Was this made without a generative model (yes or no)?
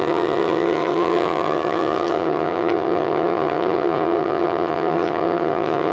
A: no